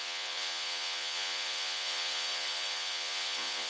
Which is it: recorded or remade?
remade